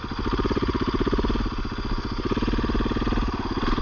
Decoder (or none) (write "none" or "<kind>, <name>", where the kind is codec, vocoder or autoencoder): none